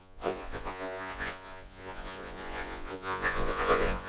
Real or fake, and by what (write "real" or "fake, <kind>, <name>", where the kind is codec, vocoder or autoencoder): fake, vocoder, Vocos